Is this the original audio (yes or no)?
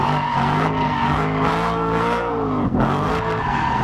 no